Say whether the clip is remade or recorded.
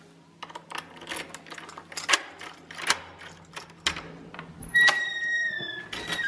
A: recorded